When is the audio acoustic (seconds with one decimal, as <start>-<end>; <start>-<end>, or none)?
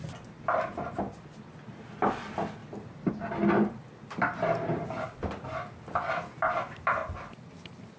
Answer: 0.0-8.0